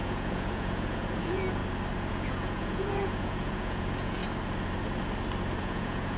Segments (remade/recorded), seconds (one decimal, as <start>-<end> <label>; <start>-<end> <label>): 0.0-1.6 remade; 1.6-2.1 recorded; 2.1-4.2 remade; 4.2-5.6 recorded; 5.6-6.2 remade